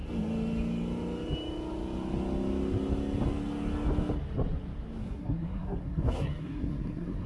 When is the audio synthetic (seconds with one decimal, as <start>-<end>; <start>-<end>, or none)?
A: 5.0-7.3